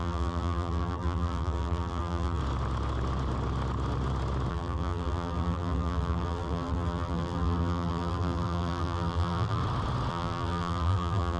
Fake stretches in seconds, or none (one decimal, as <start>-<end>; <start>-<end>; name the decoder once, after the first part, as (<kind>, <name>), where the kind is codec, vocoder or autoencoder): 0.0-2.4 (vocoder, BigVGAN v2); 4.5-9.6; 10.1-11.4